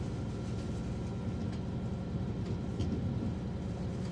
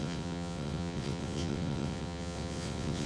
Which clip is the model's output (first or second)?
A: second